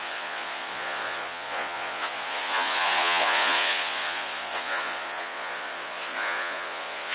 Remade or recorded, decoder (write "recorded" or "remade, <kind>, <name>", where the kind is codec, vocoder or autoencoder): remade, vocoder, Vocos